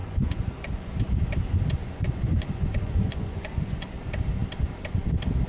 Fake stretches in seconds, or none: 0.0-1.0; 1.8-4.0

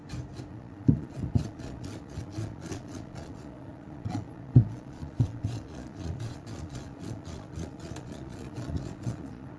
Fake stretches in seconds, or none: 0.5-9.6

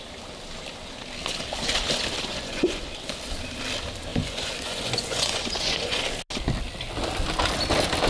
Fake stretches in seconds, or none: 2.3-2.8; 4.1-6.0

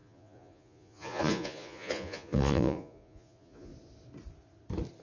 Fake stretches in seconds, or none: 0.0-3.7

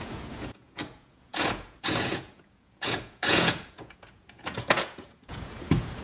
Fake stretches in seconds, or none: 0.0-6.0

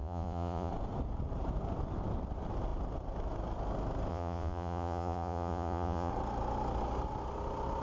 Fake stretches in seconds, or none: 0.0-0.7; 4.1-6.1